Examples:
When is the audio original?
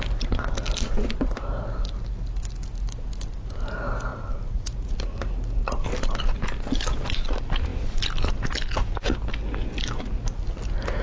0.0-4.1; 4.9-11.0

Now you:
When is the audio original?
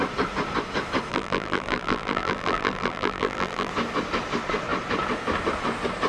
0.0-1.1; 3.7-6.1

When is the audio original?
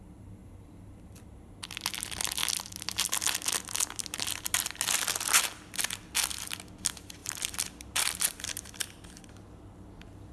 0.0-0.4; 1.2-7.2; 8.8-10.3